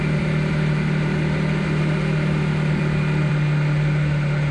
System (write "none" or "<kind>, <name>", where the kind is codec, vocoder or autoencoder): none